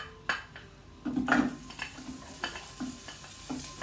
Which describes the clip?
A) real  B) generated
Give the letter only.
A